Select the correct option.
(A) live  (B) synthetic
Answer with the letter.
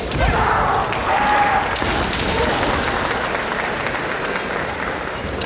B